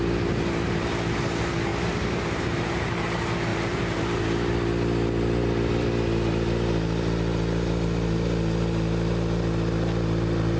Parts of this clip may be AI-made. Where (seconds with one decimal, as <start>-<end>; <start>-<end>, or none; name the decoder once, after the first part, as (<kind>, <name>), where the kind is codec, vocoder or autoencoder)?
1.7-2.9 (vocoder, BigVGAN v2); 3.5-4.2